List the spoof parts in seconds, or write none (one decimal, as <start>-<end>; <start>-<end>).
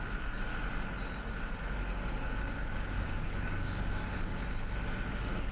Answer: 0.0-0.5; 1.2-4.3; 5.1-5.5